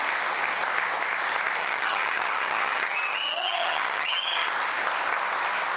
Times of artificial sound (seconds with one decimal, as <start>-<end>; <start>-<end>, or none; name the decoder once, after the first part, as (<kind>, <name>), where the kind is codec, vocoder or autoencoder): 1.6-4.5 (vocoder, HiFi-GAN)